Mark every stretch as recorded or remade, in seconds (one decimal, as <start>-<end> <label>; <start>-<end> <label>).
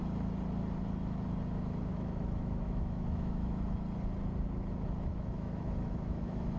0.0-1.9 recorded; 1.9-3.6 remade; 3.6-5.1 recorded; 5.1-6.6 remade